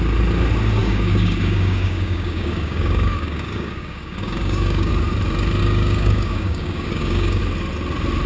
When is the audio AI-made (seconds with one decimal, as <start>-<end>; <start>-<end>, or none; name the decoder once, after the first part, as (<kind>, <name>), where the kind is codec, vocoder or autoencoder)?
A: 0.8-4.9 (codec, DAC); 5.6-7.4